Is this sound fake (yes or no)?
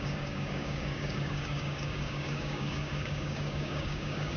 yes